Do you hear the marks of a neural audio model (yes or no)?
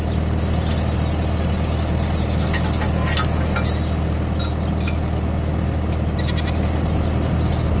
no